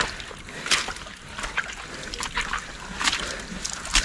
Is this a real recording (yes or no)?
yes